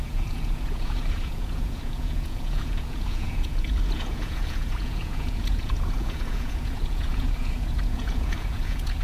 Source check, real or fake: fake